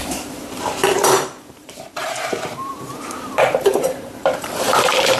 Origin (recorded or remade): remade